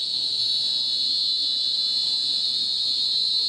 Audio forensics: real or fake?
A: real